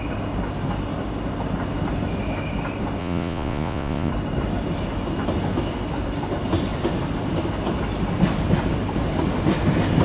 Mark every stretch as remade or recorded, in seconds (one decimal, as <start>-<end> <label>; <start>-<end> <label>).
0.0-3.0 recorded; 3.0-4.1 remade; 4.1-10.0 recorded